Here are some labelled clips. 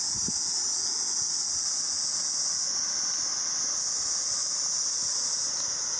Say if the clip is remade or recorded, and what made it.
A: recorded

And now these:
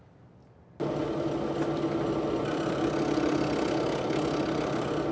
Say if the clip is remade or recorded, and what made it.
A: recorded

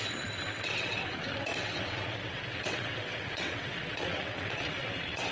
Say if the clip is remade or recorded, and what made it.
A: remade, vocoder, WaveNeXt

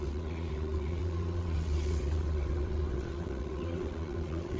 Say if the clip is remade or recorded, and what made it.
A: remade, vocoder, WaveNeXt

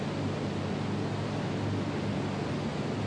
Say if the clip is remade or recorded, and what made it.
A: recorded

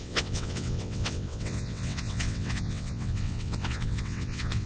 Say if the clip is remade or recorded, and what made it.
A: remade, vocoder, WaveNeXt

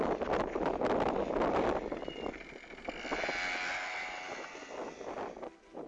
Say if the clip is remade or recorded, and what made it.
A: recorded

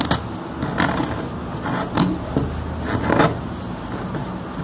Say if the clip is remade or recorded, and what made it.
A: recorded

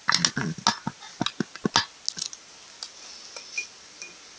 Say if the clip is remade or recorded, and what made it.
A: recorded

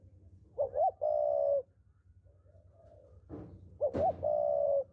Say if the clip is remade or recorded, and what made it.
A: recorded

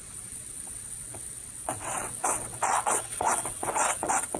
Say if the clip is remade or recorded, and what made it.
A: remade, vocoder, WaveNeXt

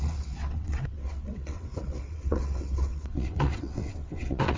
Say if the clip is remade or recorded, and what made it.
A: remade, vocoder, WaveNeXt